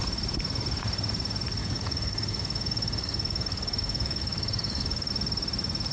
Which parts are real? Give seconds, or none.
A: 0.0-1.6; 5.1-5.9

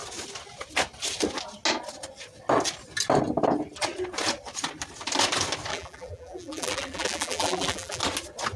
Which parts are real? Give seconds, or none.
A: 0.0-5.7; 8.0-8.6

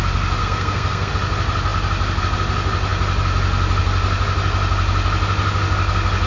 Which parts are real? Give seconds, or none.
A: 0.0-0.4; 1.1-6.3